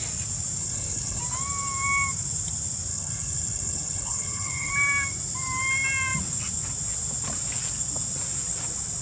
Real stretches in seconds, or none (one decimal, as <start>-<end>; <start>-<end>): 0.0-0.6; 1.2-2.9; 4.7-9.0